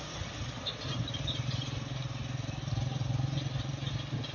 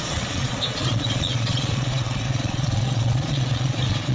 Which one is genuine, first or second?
first